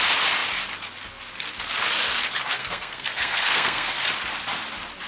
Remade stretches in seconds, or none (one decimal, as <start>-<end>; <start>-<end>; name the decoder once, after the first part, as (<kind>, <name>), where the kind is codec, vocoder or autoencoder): 2.6-4.0 (codec, SNAC)